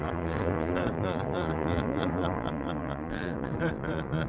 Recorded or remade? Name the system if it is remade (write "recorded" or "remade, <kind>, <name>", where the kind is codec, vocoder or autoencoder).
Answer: remade, vocoder, Vocos